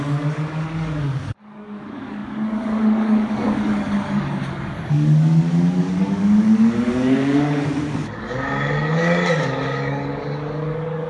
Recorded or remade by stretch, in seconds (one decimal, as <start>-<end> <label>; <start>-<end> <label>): 0.0-11.1 remade